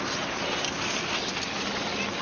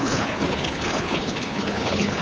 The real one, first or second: first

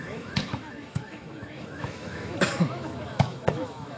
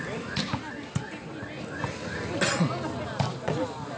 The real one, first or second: second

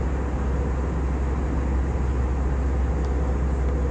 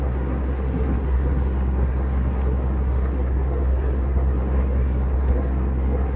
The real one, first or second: first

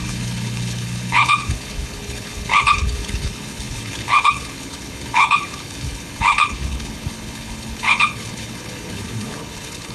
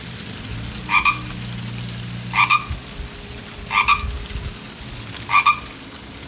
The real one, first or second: second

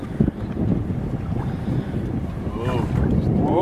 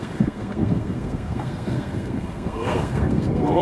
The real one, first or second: first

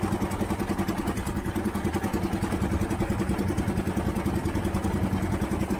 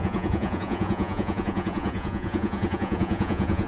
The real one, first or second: first